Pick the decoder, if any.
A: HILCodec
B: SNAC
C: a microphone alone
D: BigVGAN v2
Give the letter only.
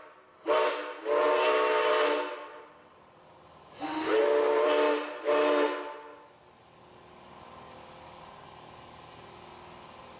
C